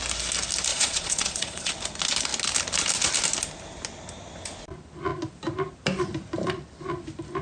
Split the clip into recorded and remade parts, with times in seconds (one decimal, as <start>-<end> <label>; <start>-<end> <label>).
0.0-0.7 recorded; 0.7-1.7 remade; 1.7-7.4 recorded